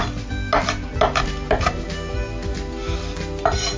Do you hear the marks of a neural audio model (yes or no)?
no